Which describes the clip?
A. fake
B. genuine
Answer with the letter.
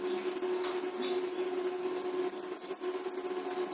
B